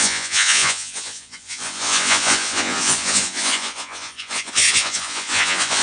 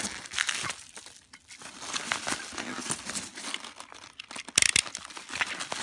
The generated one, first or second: first